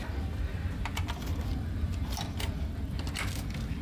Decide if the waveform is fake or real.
real